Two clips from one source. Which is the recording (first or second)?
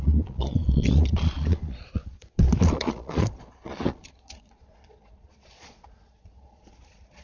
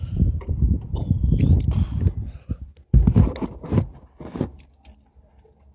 second